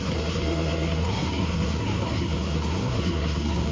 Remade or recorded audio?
remade